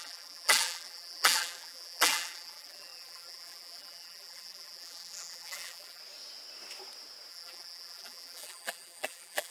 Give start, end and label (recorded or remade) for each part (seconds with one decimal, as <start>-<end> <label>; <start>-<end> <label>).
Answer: 0.0-6.0 remade; 6.0-7.3 recorded; 7.3-9.5 remade